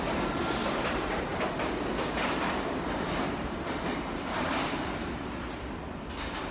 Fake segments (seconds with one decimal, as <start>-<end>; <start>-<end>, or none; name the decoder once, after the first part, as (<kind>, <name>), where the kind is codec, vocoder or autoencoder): none